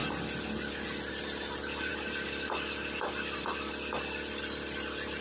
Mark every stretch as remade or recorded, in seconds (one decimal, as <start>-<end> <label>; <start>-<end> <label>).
0.0-5.2 recorded